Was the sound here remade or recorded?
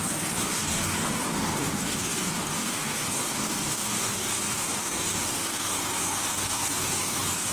remade